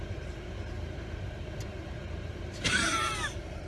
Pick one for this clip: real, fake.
fake